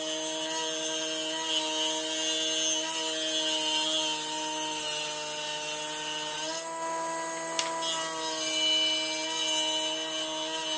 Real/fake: real